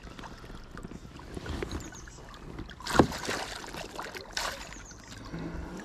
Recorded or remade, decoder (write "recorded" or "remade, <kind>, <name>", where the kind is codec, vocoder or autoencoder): recorded